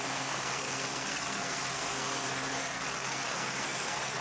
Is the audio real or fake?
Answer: fake